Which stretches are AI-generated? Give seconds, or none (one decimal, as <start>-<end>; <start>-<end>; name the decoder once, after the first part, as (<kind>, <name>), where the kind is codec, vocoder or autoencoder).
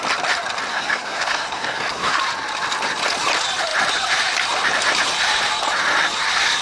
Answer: 0.7-2.2 (codec, SNAC)